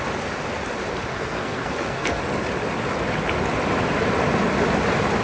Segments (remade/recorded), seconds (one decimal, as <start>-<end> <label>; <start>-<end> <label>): 0.0-1.1 recorded; 1.1-2.2 remade; 2.2-5.2 recorded